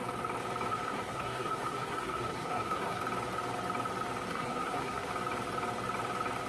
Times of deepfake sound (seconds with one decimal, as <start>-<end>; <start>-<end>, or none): 0.7-3.0; 4.3-5.1